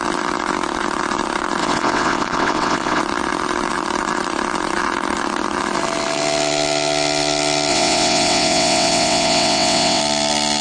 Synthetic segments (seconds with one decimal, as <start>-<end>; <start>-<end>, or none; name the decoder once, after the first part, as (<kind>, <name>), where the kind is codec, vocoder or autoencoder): 1.6-3.0 (vocoder, WaveNeXt); 7.7-10.0